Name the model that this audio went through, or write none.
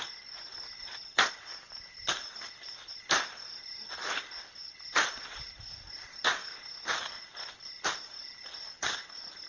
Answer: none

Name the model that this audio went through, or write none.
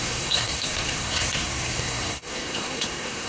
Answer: codec, SNAC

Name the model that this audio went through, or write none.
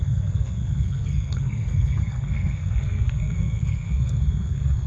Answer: codec, SNAC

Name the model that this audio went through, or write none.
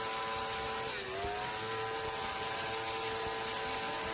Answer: none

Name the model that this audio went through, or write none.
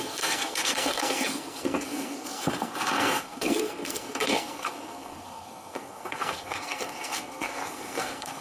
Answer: codec, SNAC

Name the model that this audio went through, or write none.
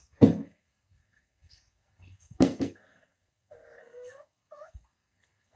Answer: codec, SNAC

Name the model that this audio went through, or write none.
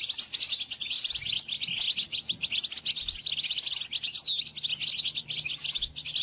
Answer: none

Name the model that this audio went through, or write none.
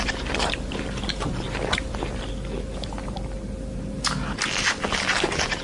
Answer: none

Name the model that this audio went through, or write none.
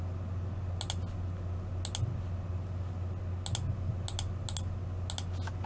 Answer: none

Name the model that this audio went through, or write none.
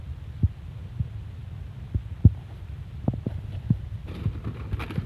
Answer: none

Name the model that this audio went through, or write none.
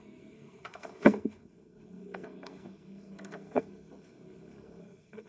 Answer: codec, SNAC